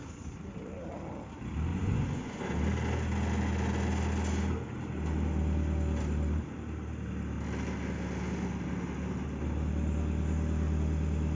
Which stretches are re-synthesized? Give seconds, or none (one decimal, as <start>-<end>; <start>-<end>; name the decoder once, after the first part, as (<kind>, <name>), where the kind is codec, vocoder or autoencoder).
1.7-2.4 (vocoder, Vocos)